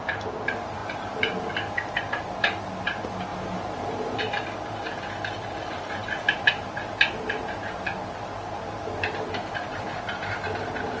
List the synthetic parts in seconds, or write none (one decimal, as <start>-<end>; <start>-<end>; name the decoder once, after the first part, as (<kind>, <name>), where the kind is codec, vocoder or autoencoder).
none